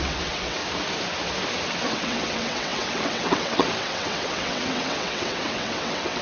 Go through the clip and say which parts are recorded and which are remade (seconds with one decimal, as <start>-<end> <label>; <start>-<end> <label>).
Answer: 0.0-0.6 remade; 0.6-1.9 recorded; 1.9-6.2 remade